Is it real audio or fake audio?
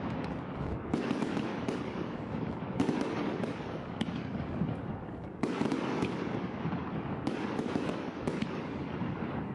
fake